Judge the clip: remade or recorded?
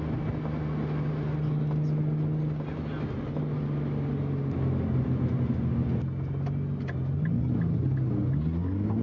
recorded